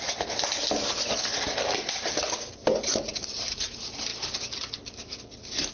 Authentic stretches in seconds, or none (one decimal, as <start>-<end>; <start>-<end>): 0.0-5.7